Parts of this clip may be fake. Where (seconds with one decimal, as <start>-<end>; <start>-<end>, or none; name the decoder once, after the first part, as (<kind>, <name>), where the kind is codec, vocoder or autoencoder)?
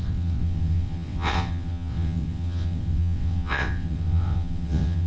0.0-5.1 (vocoder, WaveNeXt)